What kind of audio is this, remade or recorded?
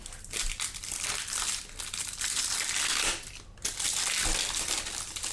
recorded